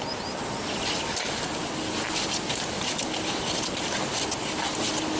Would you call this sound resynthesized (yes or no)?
no